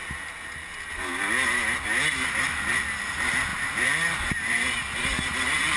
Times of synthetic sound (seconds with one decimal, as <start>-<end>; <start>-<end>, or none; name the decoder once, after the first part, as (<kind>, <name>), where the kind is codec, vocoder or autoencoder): none